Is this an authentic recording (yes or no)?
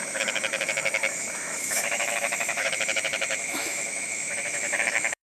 no